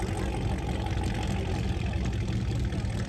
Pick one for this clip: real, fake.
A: real